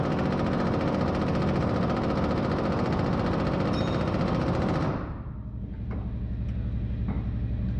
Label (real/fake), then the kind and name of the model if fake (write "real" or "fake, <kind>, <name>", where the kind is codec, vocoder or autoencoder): real